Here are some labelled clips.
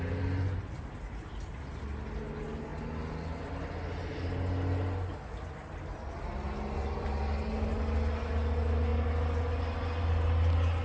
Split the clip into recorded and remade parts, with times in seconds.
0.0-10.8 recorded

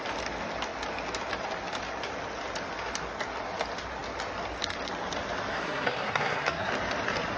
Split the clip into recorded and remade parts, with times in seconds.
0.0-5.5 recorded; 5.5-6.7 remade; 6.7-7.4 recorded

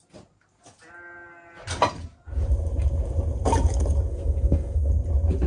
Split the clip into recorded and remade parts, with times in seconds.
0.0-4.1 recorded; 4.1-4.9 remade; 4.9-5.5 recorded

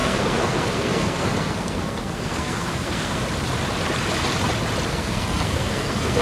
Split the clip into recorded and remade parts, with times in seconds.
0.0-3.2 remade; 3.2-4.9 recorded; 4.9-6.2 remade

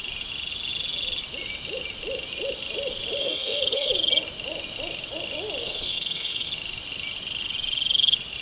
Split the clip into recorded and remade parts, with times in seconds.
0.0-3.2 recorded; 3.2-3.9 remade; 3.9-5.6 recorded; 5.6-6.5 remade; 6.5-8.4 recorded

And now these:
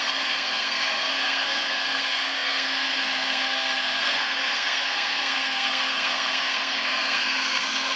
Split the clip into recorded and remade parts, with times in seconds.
0.0-8.0 remade